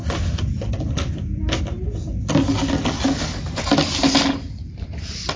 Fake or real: real